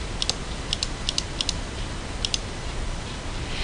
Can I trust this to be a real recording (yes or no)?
yes